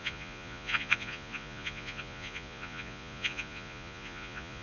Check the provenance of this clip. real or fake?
fake